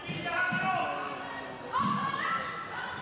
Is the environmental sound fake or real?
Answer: real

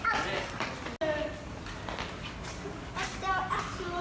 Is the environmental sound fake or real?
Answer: real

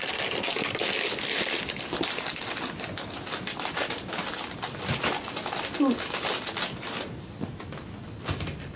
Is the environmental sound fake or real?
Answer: real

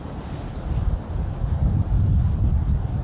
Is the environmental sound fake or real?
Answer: real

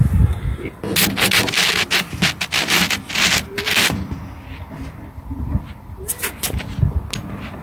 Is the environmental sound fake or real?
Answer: real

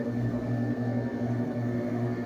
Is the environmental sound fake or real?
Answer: fake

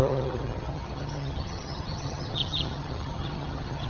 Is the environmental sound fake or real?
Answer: fake